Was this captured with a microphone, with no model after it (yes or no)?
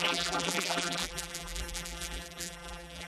no